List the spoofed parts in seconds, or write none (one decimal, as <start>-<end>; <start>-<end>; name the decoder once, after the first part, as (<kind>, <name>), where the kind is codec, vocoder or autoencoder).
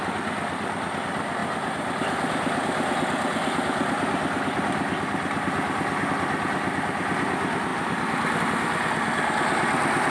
none